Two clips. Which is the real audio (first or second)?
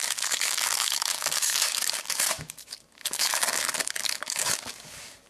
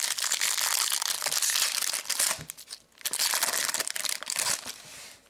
second